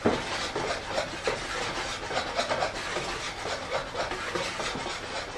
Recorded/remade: recorded